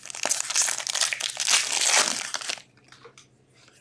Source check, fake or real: real